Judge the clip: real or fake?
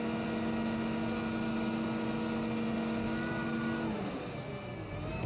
real